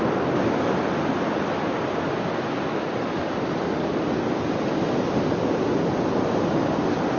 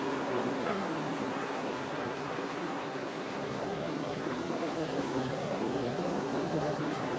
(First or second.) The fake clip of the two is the second